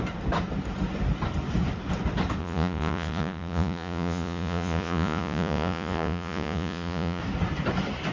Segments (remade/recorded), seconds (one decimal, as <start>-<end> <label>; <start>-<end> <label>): 0.0-2.4 recorded; 2.4-7.2 remade; 7.2-8.1 recorded